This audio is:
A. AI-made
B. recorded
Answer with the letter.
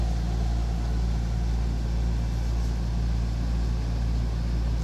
B